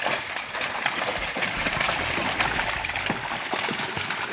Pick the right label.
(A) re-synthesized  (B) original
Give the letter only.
B